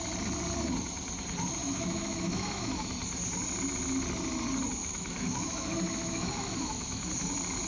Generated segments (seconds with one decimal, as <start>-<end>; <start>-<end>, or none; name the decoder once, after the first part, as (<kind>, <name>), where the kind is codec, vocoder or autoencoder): 1.6-2.7 (autoencoder, DAC-VAE); 4.8-7.1